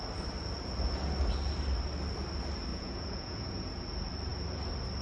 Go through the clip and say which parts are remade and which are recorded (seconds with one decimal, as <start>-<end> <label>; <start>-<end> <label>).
0.0-2.7 recorded; 2.7-3.8 remade; 3.8-5.0 recorded